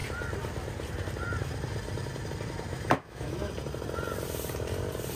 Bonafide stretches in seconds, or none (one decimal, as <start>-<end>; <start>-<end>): 0.0-2.7; 3.5-5.2